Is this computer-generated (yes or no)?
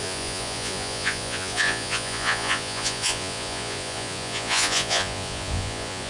yes